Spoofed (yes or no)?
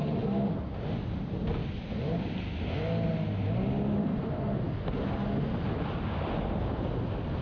no